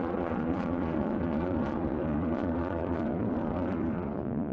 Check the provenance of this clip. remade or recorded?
remade